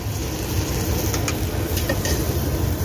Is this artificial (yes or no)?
no